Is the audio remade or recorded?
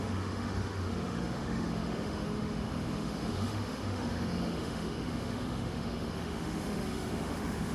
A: remade